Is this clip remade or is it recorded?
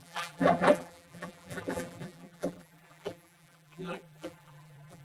remade